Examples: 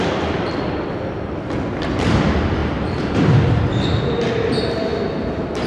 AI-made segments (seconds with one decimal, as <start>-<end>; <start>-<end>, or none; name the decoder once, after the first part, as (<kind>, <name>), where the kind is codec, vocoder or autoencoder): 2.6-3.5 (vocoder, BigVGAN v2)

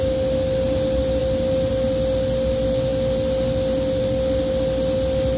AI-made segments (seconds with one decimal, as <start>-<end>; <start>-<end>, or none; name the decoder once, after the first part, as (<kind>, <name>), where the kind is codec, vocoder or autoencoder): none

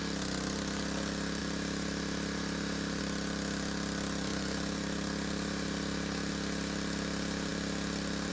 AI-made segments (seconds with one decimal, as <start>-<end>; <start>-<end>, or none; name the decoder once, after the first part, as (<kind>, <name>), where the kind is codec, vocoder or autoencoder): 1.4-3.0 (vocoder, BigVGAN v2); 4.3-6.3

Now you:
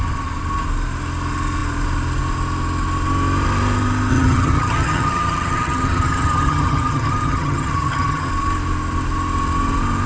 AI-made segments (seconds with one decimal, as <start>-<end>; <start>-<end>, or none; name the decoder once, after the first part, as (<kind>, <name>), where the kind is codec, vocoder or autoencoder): 4.1-8.3 (vocoder, HiFi-GAN)

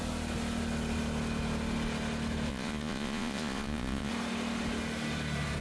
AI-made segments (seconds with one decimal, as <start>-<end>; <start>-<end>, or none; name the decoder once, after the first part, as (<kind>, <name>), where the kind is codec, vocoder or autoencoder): 2.5-4.1 (vocoder, Vocos)

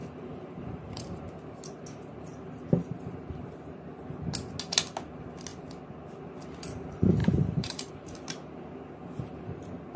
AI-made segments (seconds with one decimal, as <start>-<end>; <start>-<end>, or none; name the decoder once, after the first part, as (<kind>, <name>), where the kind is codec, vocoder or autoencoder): 0.0-1.2 (vocoder, BigVGAN v2); 7.2-7.9

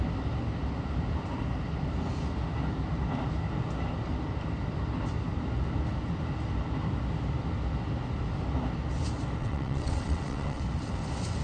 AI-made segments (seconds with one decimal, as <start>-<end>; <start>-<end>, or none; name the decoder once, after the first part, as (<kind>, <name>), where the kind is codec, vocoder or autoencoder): 9.4-10.6 (vocoder, WaveNeXt)

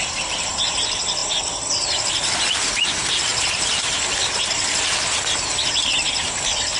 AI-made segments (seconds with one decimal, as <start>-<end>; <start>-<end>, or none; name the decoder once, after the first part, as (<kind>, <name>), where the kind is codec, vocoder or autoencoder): 0.0-1.2 (vocoder, BigVGAN v2); 2.4-3.3; 6.1-6.8